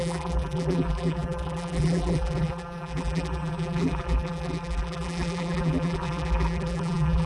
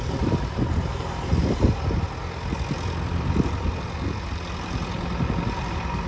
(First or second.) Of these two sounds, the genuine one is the second